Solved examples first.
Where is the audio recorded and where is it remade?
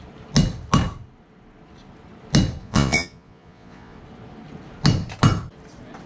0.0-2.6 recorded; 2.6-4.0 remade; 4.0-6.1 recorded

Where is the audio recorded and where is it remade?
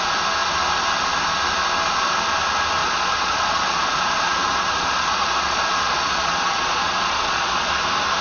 0.0-2.8 recorded; 2.8-7.7 remade; 7.7-8.2 recorded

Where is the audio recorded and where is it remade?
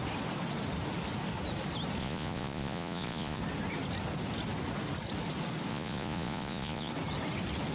0.0-2.0 recorded; 2.0-3.4 remade; 3.4-5.7 recorded; 5.7-6.9 remade; 6.9-7.7 recorded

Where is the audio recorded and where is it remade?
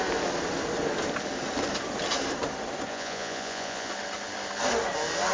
0.0-2.9 recorded; 2.9-3.9 remade; 3.9-5.3 recorded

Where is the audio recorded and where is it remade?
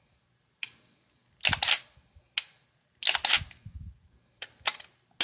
0.0-5.2 recorded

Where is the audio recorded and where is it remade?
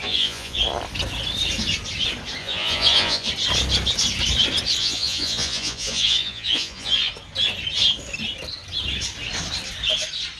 0.0-0.6 remade; 0.6-2.4 recorded; 2.4-3.3 remade; 3.3-4.8 recorded; 4.8-7.1 remade; 7.1-10.4 recorded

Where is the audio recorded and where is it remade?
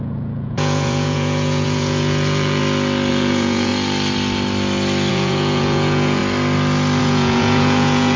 0.0-2.6 remade; 2.6-3.1 recorded; 3.1-3.7 remade; 3.7-5.1 recorded; 5.1-6.2 remade; 6.2-7.0 recorded; 7.0-8.2 remade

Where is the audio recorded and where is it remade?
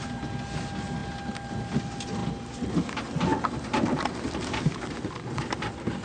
0.0-6.0 recorded